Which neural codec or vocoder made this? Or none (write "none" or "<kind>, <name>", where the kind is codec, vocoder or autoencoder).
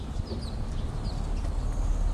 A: none